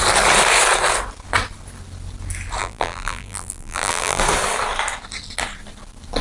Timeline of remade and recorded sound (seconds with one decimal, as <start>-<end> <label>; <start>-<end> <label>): 0.0-2.6 recorded; 2.6-4.2 remade; 4.2-6.2 recorded